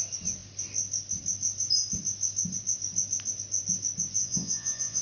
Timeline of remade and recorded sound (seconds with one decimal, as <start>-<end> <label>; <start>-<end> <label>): 0.0-4.2 recorded; 4.2-5.0 remade